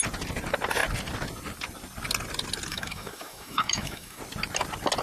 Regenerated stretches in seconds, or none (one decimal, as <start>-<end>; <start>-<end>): 2.7-4.2